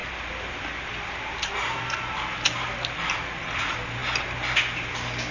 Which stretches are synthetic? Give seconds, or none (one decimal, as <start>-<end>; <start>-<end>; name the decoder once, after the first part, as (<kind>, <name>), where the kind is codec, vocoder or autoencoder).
0.0-2.7 (vocoder, BigVGAN v2)